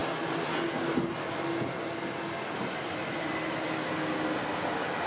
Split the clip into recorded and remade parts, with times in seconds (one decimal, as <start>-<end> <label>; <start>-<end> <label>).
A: 0.0-5.1 recorded